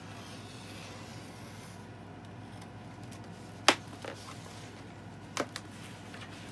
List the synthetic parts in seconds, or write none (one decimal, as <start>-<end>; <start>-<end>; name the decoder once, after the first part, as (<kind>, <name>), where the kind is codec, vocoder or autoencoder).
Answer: none